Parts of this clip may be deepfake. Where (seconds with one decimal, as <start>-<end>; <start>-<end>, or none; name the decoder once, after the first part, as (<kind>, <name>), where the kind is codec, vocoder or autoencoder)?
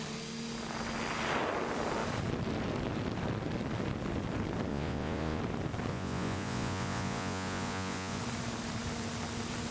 4.7-5.4 (vocoder, Vocos); 5.9-8.2